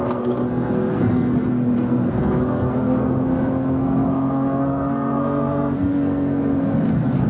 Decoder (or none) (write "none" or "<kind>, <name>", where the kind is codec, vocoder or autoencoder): codec, SNAC